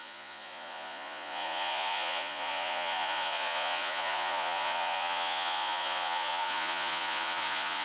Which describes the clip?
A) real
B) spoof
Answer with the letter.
B